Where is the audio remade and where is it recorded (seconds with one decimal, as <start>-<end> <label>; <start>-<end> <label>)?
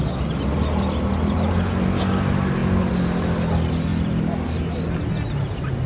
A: 0.0-5.9 recorded